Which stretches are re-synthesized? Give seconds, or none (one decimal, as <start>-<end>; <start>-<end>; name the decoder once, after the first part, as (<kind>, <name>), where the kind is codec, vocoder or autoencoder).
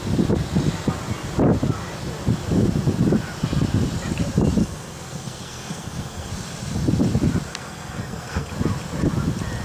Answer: 4.6-6.3 (codec, SNAC); 7.5-8.5